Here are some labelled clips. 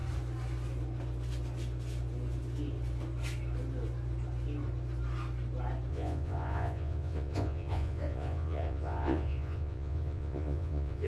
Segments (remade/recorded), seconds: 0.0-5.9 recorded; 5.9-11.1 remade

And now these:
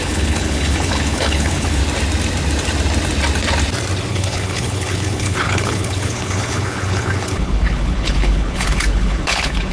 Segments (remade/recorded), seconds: 0.0-1.8 remade; 1.8-4.1 recorded; 4.1-9.7 remade

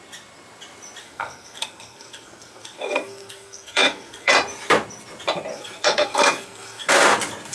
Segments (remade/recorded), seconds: 0.0-1.0 recorded; 1.0-4.3 remade; 4.3-5.5 recorded; 5.5-6.9 remade; 6.9-7.5 recorded

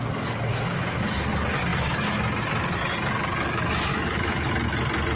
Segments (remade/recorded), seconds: 0.0-0.5 recorded; 0.5-1.0 remade; 1.0-3.9 recorded; 3.9-4.5 remade; 4.5-5.2 recorded

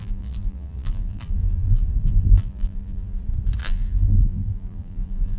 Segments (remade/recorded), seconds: 0.0-3.2 remade; 3.2-3.6 recorded; 3.6-5.4 remade